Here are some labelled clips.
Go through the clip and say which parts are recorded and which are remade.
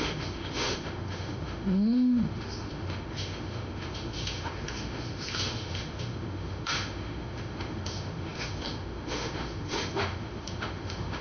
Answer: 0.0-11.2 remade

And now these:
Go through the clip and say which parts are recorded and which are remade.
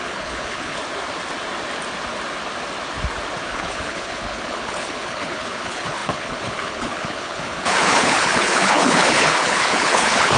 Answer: 0.0-0.8 remade; 0.8-3.4 recorded; 3.4-10.4 remade